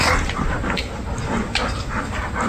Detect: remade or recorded recorded